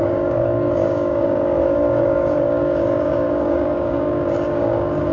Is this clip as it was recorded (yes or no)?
no